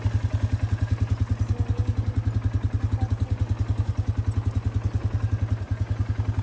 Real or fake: real